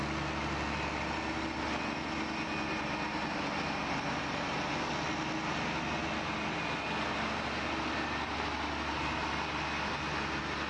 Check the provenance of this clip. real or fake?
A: real